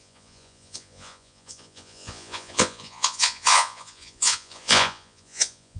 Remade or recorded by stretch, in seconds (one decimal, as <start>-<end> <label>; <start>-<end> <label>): 0.0-5.8 remade

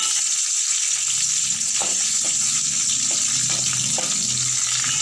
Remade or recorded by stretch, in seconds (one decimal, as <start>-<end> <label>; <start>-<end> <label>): 0.0-1.8 recorded; 1.8-2.5 remade; 2.5-5.0 recorded

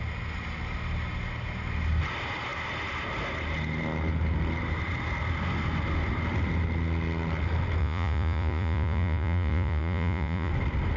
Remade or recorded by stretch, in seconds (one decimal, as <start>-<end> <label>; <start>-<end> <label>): 0.0-7.8 recorded; 7.8-10.5 remade; 10.5-11.0 recorded

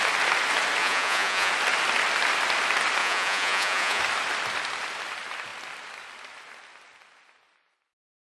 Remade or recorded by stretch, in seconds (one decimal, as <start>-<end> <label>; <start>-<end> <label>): 0.0-0.8 recorded; 0.8-1.5 remade; 1.5-3.0 recorded; 3.0-4.0 remade; 4.0-8.2 recorded

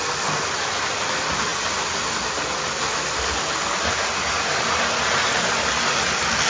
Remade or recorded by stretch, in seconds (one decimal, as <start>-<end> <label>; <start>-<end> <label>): 0.0-6.5 recorded

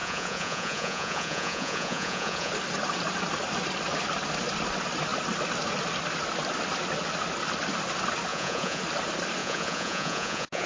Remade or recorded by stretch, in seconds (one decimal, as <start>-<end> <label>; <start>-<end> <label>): 0.0-2.5 remade; 2.5-8.3 recorded; 8.3-8.8 remade; 8.8-9.4 recorded; 9.4-10.7 remade